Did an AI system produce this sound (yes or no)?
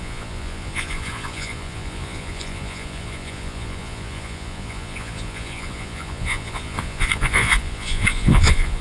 yes